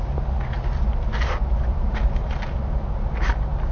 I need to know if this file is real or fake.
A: real